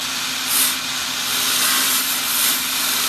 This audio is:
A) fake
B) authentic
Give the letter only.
B